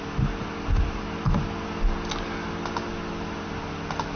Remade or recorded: recorded